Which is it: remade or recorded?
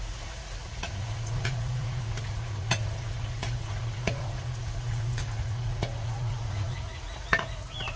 remade